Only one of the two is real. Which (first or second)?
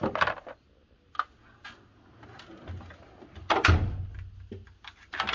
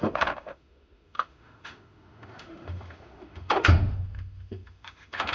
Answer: first